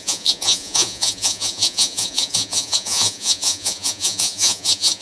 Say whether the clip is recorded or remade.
remade